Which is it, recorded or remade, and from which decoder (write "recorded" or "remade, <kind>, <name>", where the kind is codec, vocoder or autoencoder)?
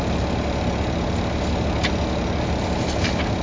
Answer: recorded